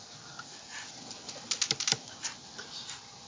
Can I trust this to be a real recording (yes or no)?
yes